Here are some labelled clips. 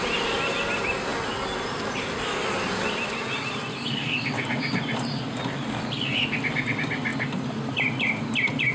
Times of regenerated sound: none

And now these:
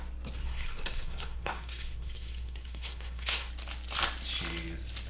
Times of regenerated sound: 0.4-3.5 (codec, SNAC)